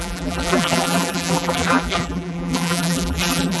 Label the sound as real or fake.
fake